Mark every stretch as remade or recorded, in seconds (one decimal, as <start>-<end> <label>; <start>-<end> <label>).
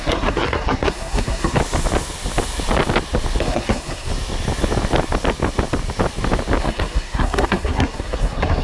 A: 0.0-1.6 remade; 1.6-3.4 recorded; 3.4-4.1 remade; 4.1-6.6 recorded; 6.6-8.6 remade